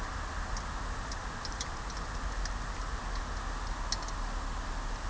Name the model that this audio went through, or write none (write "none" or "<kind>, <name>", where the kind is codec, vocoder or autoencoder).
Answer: none